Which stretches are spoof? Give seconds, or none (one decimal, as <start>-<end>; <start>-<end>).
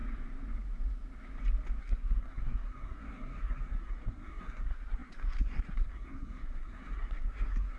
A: 1.8-7.8